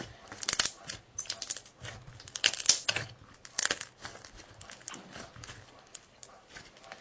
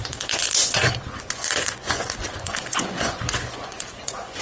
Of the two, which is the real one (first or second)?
first